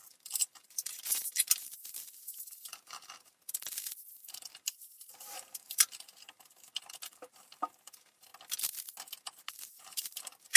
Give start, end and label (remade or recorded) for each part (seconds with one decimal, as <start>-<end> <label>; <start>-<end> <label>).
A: 0.0-8.3 remade; 8.3-9.5 recorded; 9.5-10.6 remade